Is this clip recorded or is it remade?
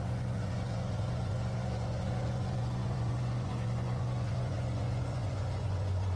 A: remade